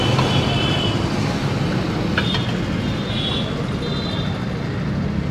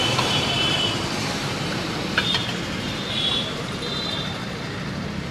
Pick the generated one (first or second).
second